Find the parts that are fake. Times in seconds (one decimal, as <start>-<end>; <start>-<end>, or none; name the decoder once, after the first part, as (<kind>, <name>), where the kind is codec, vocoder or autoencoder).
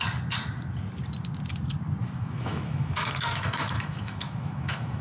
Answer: 2.0-5.0 (autoencoder, DAC-VAE)